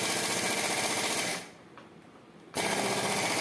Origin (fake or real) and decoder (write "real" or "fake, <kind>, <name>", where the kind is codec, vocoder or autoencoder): real